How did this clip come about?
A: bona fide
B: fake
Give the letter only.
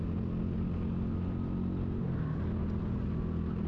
A